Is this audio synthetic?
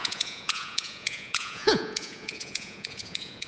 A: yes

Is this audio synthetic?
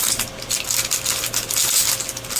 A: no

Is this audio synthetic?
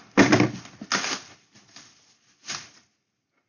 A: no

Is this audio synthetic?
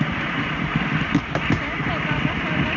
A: no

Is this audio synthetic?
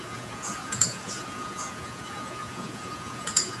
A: yes